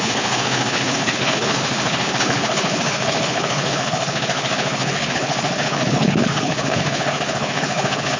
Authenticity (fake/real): fake